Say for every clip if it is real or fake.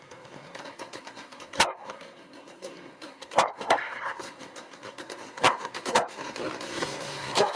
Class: fake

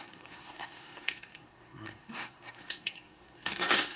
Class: fake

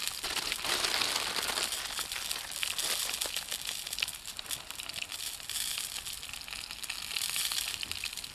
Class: real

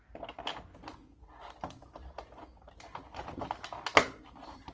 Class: real